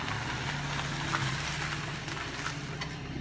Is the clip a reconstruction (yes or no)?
no